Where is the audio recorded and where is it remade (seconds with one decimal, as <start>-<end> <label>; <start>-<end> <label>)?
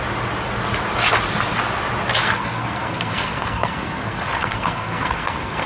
0.0-2.2 recorded; 2.2-5.7 remade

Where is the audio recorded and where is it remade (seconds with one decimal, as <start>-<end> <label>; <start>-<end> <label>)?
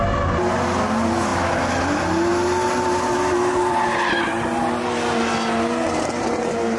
0.0-6.8 recorded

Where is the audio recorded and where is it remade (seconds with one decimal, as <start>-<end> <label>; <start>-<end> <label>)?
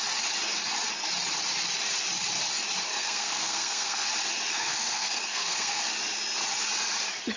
0.0-2.9 recorded; 2.9-4.1 remade; 4.1-4.5 recorded; 4.5-5.8 remade; 5.8-7.4 recorded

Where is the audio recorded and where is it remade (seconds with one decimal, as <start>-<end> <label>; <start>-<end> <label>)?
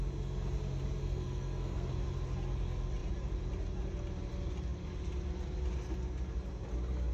0.0-1.0 recorded; 1.0-1.9 remade; 1.9-7.1 recorded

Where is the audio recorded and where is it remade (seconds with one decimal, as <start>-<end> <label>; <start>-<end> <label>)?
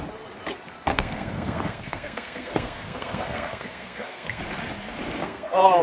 0.0-0.9 recorded; 0.9-4.4 remade; 4.4-5.2 recorded; 5.2-5.8 remade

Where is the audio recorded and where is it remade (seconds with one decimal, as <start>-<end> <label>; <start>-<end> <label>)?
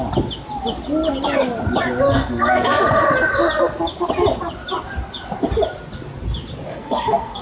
0.0-2.1 recorded; 2.1-2.8 remade; 2.8-6.7 recorded; 6.7-7.4 remade